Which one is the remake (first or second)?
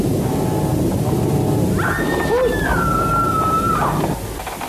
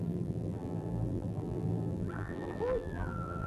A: second